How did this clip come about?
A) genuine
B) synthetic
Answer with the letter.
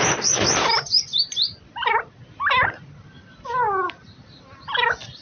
A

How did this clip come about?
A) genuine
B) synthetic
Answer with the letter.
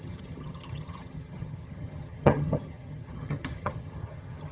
B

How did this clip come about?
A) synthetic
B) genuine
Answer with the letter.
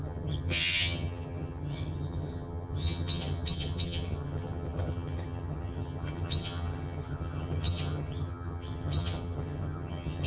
A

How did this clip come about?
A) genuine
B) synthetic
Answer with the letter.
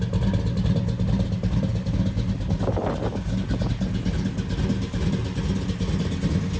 A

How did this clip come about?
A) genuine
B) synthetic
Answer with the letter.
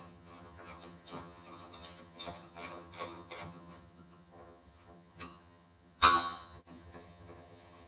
B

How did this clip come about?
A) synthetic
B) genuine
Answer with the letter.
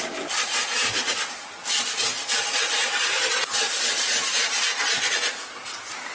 B